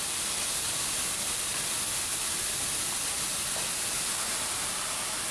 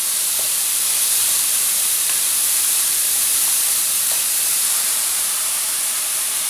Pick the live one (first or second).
first